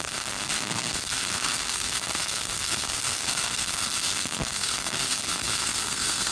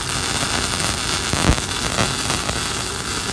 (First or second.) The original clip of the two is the second